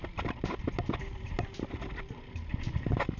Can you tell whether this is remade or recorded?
remade